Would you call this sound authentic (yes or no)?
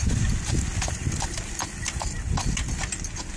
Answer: yes